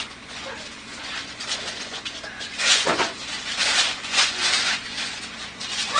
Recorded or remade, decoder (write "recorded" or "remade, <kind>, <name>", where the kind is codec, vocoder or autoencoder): remade, vocoder, Vocos